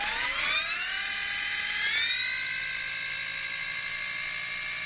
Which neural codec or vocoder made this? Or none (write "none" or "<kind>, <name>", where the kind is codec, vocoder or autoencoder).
none